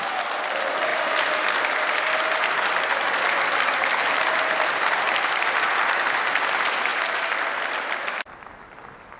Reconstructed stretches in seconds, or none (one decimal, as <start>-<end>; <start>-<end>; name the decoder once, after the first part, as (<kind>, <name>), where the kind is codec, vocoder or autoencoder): none